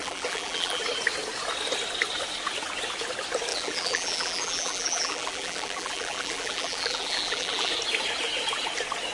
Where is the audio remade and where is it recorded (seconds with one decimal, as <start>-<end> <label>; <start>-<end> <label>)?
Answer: 0.0-0.8 remade; 0.8-3.5 recorded; 3.5-7.7 remade; 7.7-9.1 recorded